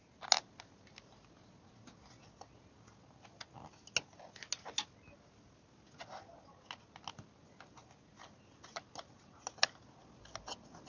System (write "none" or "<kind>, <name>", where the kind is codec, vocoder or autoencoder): none